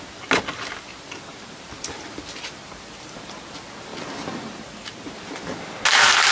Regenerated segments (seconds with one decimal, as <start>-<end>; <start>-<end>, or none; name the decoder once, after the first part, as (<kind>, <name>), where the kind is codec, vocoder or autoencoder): none